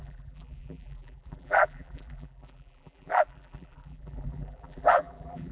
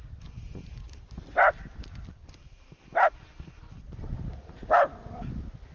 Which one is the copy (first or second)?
first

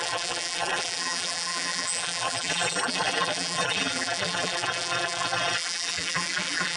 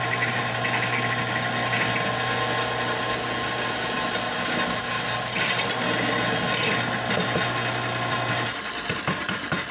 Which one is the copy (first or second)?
first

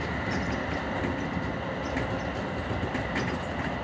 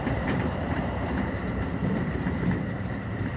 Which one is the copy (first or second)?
second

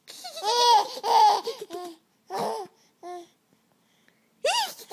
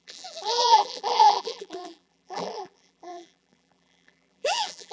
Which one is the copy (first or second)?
second